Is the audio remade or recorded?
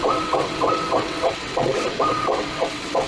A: remade